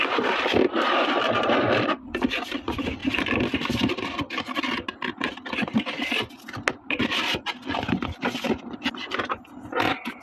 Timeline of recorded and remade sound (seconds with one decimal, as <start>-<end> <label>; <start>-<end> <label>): 0.0-10.2 recorded